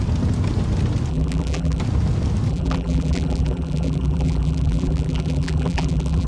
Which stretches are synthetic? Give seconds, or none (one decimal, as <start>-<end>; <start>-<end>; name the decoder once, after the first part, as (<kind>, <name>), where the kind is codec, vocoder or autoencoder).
1.1-1.8 (vocoder, BigVGAN v2); 2.5-6.3